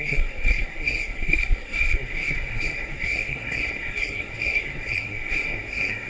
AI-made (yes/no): yes